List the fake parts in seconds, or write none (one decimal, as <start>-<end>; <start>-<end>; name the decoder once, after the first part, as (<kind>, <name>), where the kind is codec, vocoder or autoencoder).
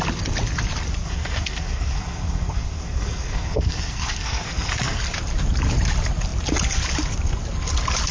1.0-5.0 (codec, SNAC)